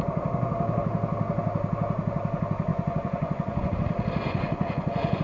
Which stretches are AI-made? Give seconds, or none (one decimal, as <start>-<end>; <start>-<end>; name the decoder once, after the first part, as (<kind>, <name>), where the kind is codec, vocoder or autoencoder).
2.7-3.7 (vocoder, Vocos); 4.2-5.2